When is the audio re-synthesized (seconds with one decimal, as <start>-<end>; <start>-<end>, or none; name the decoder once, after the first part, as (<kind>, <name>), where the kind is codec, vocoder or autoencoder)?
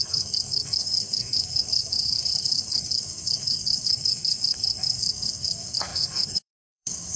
0.0-7.2 (codec, SNAC)